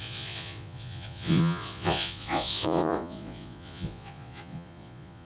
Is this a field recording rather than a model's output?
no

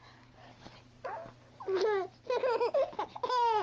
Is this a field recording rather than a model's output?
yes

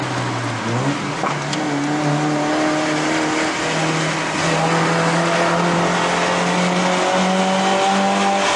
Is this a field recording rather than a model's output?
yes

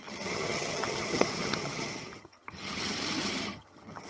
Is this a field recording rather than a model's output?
no